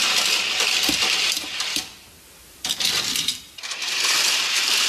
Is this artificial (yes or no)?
no